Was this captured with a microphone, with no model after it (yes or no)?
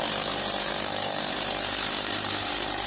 no